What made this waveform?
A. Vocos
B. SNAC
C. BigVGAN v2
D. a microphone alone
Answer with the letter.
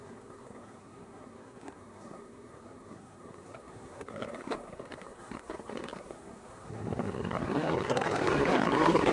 B